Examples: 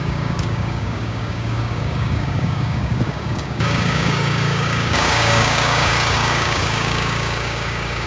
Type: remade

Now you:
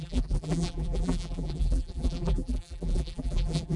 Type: remade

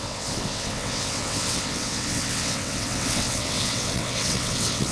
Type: remade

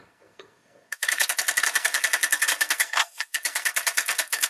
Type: remade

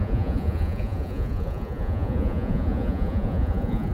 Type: remade